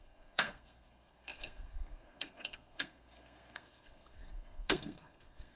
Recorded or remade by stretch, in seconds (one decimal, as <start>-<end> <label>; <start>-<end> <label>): 0.0-5.6 remade